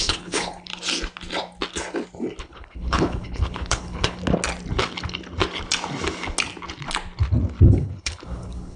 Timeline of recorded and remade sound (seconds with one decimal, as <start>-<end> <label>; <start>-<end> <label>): 0.0-0.7 remade; 0.7-2.4 recorded; 2.4-4.2 remade; 4.2-7.6 recorded; 7.6-8.8 remade